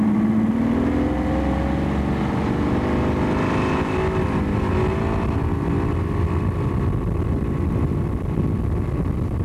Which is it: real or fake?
real